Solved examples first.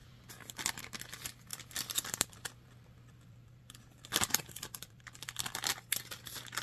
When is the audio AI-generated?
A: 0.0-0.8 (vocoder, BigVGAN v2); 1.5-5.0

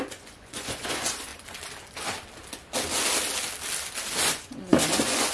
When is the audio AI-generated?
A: 0.0-1.3 (vocoder, Vocos); 4.2-5.3

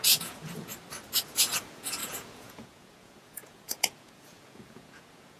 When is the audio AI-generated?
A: 0.0-0.7 (vocoder, Vocos); 1.3-5.4

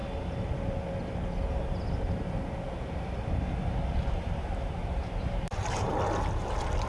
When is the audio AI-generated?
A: 4.1-5.9 (vocoder, BigVGAN v2)

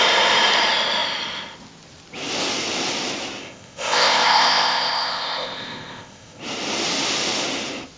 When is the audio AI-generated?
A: 3.4-6.4 (codec, ZipCodec)

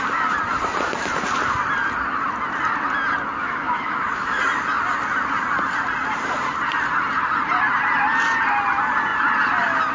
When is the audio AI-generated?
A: 3.4-4.4 (autoencoder, DAC-VAE)

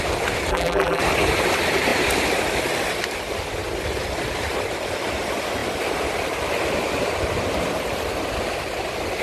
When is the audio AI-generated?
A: 0.5-1.0 (vocoder, BigVGAN v2)